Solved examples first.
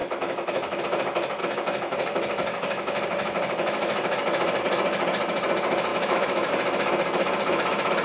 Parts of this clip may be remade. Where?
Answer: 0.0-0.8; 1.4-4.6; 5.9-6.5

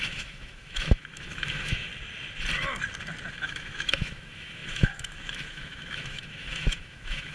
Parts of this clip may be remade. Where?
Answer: 0.0-1.9; 3.3-7.3